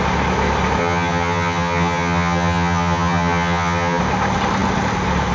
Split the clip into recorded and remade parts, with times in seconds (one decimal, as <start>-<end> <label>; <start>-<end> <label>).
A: 0.0-0.8 recorded; 0.8-4.0 remade; 4.0-5.3 recorded